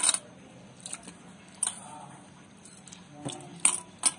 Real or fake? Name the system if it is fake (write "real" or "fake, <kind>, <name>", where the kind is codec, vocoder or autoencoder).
real